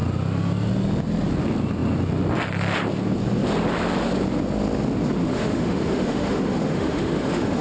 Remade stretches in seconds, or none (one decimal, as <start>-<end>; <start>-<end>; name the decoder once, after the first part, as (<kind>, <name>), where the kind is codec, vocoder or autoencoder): 5.2-7.6 (autoencoder, DAC-VAE)